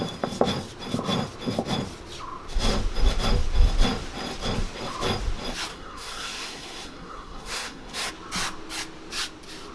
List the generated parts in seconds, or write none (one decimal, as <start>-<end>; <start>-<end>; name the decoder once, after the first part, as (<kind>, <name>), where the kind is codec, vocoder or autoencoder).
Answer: 5.7-8.1 (codec, SNAC)